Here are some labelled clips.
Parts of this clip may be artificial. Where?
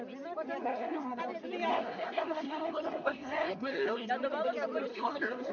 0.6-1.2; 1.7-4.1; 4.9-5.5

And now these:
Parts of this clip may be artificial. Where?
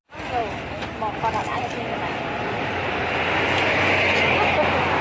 none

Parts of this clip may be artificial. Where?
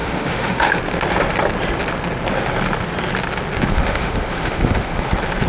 0.0-0.8; 3.7-5.1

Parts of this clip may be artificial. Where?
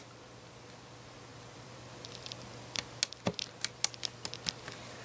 1.3-2.4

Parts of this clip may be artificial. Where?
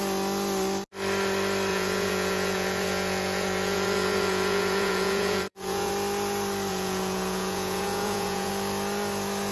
1.7-5.9; 6.7-8.5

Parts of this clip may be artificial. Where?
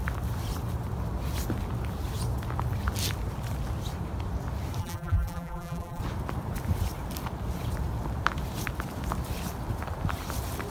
4.8-6.0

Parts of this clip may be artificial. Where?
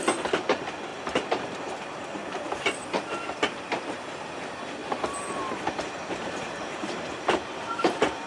0.9-1.8; 2.2-2.9; 4.8-8.3